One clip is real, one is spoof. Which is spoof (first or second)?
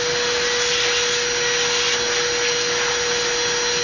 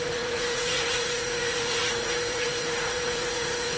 second